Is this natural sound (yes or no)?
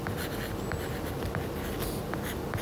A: yes